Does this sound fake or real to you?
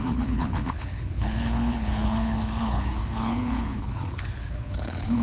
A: fake